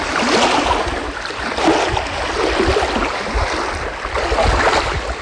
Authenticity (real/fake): real